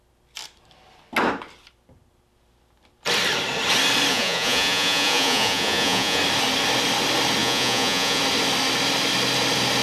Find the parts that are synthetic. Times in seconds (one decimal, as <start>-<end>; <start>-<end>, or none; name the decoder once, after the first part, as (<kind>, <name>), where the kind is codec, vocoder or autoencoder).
4.1-6.2 (vocoder, Vocos); 7.4-8.2